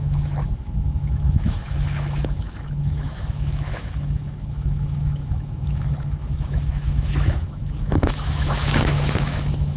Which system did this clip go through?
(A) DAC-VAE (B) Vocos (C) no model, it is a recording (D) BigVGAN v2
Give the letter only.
A